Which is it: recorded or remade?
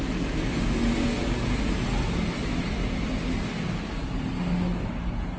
recorded